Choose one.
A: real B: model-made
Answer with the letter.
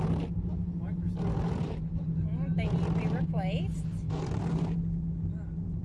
A